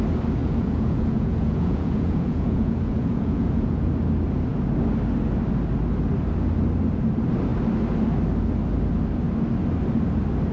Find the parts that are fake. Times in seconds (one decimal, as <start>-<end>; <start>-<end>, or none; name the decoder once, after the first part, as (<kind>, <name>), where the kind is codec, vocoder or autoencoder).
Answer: 0.4-3.9 (vocoder, Vocos)